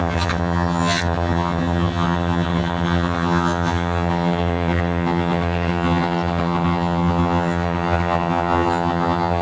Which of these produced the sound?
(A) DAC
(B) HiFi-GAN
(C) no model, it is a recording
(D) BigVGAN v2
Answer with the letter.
B